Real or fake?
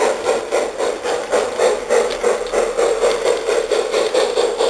real